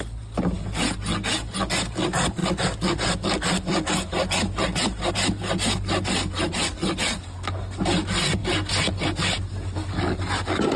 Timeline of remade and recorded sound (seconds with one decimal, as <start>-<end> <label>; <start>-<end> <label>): 0.0-10.8 recorded